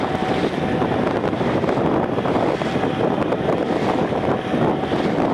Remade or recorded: recorded